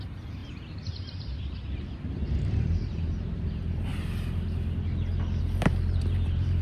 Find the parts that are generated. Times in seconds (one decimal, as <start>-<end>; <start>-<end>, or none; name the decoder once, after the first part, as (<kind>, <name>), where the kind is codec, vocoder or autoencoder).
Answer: 0.0-0.4 (vocoder, BigVGAN v2); 0.9-1.6; 2.4-3.9; 5.4-6.6